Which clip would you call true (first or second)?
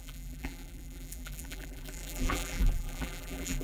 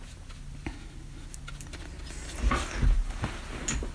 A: second